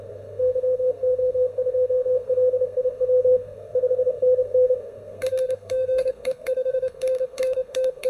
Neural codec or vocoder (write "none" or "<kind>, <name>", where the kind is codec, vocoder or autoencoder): codec, SNAC